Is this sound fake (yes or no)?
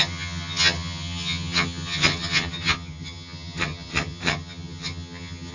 yes